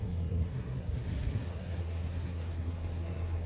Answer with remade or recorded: remade